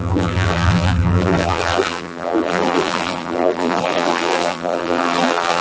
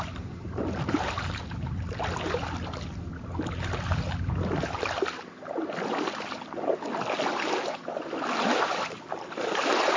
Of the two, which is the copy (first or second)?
first